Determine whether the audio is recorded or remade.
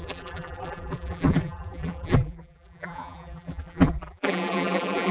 remade